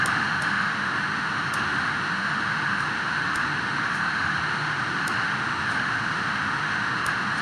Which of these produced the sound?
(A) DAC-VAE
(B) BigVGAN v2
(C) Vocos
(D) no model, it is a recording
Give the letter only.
A